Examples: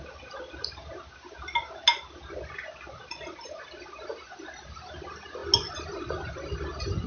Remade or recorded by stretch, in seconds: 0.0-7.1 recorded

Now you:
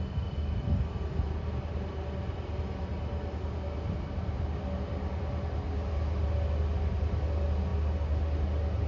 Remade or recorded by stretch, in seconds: 0.0-8.9 recorded

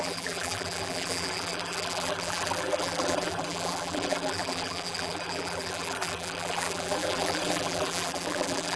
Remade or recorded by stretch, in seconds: 0.0-8.8 remade